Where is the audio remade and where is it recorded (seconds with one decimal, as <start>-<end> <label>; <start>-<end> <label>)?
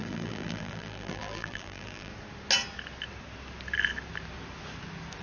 0.0-2.1 remade; 2.1-5.2 recorded